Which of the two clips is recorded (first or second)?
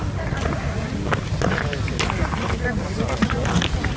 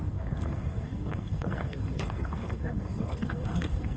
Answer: first